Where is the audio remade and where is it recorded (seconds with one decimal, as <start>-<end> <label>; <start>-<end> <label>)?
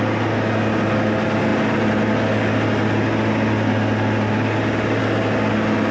0.0-5.9 recorded